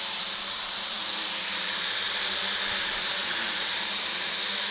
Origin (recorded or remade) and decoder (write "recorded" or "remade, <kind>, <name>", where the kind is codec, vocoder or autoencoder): remade, vocoder, BigVGAN v2